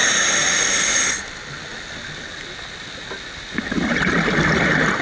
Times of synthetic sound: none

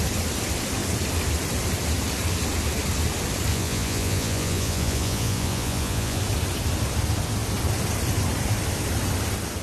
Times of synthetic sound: 3.5-6.2 (vocoder, Vocos)